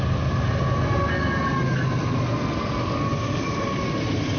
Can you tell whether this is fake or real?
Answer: real